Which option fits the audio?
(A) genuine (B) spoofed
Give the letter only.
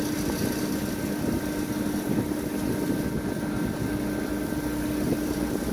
A